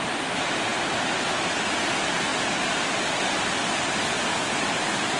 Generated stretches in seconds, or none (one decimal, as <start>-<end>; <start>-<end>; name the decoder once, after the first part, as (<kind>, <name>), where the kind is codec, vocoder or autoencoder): none